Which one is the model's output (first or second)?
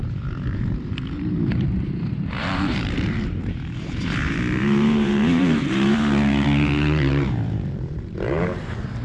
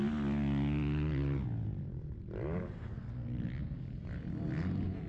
first